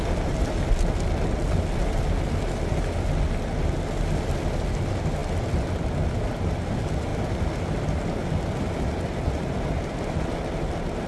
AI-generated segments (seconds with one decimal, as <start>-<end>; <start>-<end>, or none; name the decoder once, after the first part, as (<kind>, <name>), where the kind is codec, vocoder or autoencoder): none